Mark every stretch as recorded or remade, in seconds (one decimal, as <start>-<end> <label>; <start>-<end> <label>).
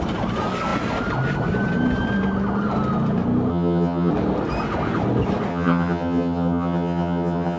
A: 0.0-3.5 recorded; 3.5-4.1 remade; 4.1-5.5 recorded; 5.5-7.6 remade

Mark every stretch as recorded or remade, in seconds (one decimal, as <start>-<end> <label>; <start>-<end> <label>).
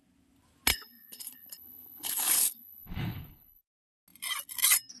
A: 0.0-0.7 recorded; 0.7-3.6 remade; 3.6-5.0 recorded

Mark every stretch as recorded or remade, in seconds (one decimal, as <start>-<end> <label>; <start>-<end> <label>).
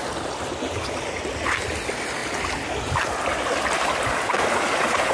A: 0.0-5.1 recorded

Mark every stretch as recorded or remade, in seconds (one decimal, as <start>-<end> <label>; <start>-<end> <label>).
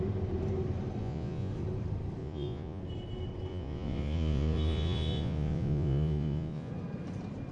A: 0.0-1.0 recorded; 1.0-1.5 remade; 1.5-2.2 recorded; 2.2-2.8 remade; 2.8-3.5 recorded; 3.5-6.7 remade; 6.7-7.5 recorded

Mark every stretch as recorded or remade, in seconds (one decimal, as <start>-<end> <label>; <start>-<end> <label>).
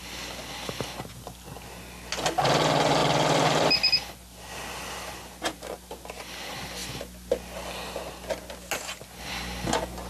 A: 0.0-10.1 recorded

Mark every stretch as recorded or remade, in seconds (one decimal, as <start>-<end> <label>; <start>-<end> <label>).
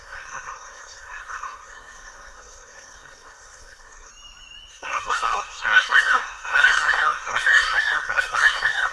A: 0.0-4.1 remade; 4.1-4.7 recorded; 4.7-8.9 remade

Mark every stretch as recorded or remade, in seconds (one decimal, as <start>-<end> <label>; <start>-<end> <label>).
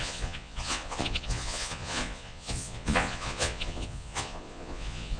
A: 0.0-5.2 remade